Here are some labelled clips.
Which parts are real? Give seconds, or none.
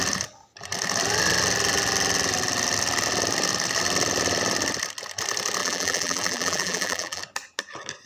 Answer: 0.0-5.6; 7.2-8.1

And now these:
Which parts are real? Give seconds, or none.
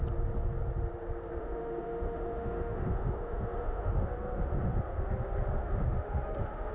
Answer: 0.0-1.4; 5.1-5.6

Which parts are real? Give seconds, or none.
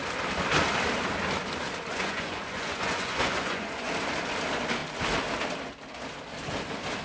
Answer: 0.0-1.9; 3.9-7.0